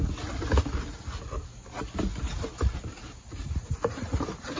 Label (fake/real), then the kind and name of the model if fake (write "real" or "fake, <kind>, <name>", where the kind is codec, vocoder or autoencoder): real